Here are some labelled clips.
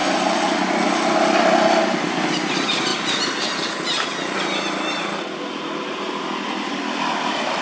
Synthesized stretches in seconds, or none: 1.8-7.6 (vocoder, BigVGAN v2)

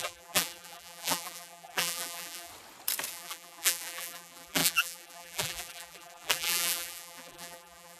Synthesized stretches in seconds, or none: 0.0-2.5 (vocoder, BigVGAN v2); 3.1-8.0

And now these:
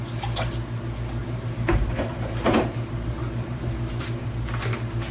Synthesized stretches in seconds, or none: 1.2-4.3 (vocoder, BigVGAN v2)

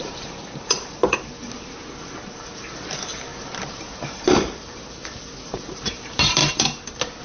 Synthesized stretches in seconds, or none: 0.0-6.4 (vocoder, BigVGAN v2)

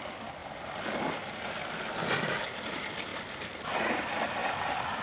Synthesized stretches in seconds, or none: 4.4-5.0 (vocoder, BigVGAN v2)